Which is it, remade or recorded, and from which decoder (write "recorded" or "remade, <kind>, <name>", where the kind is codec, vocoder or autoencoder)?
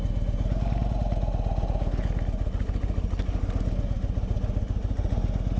recorded